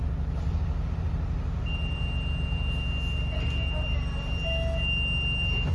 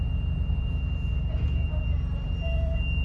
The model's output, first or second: second